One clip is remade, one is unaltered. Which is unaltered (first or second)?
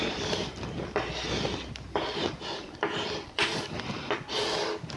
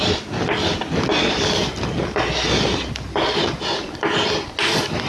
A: second